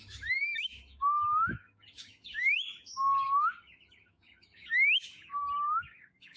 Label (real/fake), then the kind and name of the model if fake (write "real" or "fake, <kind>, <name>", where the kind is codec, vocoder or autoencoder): fake, autoencoder, DAC-VAE